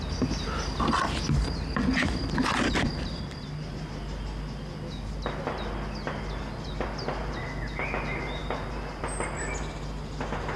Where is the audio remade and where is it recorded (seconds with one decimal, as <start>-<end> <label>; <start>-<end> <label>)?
0.0-10.6 recorded